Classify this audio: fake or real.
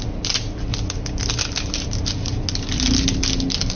real